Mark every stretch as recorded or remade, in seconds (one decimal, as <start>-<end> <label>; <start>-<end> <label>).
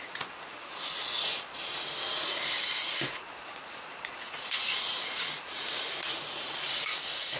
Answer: 0.0-1.3 remade; 1.3-2.8 recorded; 2.8-7.4 remade